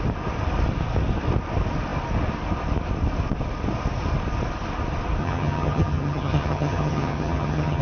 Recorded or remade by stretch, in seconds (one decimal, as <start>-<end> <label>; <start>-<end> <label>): 0.0-5.2 recorded; 5.2-7.8 remade